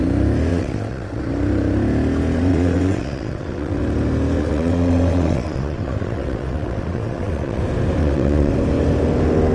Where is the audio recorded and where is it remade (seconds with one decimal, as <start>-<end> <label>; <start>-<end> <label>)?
0.0-0.5 recorded; 0.5-1.2 remade; 1.2-2.5 recorded; 2.5-3.8 remade; 3.8-4.4 recorded; 4.4-7.6 remade; 7.6-8.0 recorded; 8.0-8.5 remade; 8.5-9.5 recorded